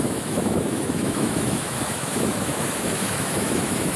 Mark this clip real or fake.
fake